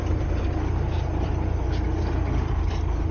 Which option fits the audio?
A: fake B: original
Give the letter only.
B